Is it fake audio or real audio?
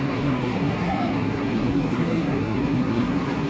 fake